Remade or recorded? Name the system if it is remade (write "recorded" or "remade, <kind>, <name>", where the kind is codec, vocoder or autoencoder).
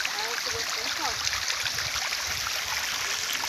recorded